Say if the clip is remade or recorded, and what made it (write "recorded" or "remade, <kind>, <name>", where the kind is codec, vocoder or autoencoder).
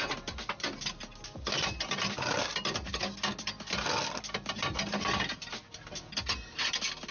recorded